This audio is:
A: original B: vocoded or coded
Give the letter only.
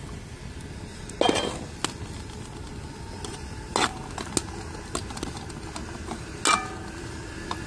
A